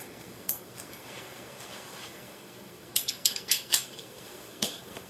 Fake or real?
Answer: fake